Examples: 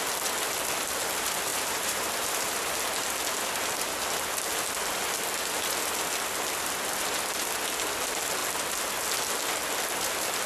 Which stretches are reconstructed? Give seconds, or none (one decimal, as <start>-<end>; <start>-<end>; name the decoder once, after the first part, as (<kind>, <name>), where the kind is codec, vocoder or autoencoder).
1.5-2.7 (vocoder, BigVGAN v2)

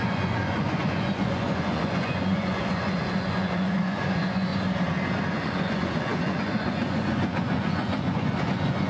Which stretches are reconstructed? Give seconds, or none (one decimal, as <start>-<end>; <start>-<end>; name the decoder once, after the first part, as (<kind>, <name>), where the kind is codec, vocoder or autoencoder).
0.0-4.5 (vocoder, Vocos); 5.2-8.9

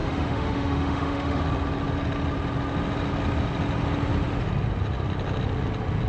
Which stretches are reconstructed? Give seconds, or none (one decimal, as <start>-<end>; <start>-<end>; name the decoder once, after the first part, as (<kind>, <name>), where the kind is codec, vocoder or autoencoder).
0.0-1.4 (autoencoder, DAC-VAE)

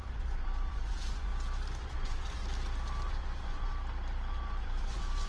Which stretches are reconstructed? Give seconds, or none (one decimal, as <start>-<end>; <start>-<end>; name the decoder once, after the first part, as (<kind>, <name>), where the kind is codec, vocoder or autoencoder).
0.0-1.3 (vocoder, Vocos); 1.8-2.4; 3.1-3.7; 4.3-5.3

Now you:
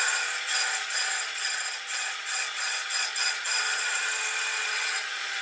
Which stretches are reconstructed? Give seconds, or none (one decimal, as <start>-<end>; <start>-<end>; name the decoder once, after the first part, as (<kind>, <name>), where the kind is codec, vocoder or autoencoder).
0.8-4.0 (vocoder, Vocos); 4.6-5.4

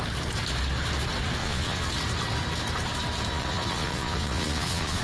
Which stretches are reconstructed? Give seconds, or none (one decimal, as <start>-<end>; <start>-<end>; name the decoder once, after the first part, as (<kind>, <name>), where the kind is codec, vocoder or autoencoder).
1.4-1.9 (vocoder, Vocos); 3.3-5.0

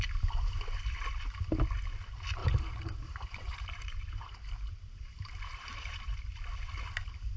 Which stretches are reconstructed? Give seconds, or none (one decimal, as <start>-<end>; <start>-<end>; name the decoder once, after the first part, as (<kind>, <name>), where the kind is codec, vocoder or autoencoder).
2.4-6.4 (vocoder, BigVGAN v2)

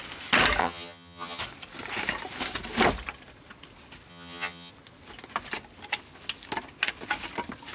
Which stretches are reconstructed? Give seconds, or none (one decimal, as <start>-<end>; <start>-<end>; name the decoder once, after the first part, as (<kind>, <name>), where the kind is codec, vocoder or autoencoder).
0.6-1.4 (vocoder, HiFi-GAN); 4.1-4.7